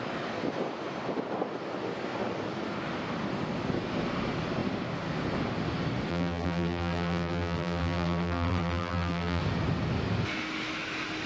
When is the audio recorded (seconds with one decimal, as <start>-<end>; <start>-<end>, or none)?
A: 0.0-6.1; 9.4-11.3